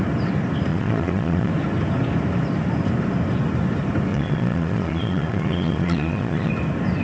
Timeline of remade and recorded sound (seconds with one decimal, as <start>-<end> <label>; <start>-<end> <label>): 0.0-0.7 recorded; 0.7-1.5 remade; 1.5-4.1 recorded; 4.1-6.5 remade; 6.5-7.0 recorded